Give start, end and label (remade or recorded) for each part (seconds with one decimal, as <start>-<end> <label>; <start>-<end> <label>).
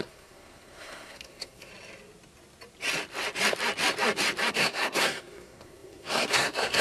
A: 0.0-1.7 remade; 1.7-4.5 recorded; 4.5-6.8 remade